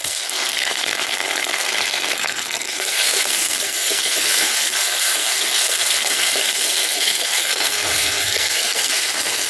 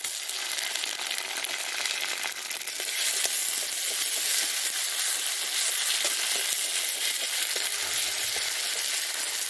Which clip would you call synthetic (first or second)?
first